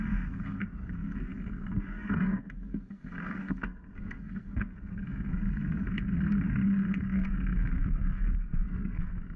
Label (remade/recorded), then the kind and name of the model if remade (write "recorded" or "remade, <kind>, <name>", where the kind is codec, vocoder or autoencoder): remade, codec, SNAC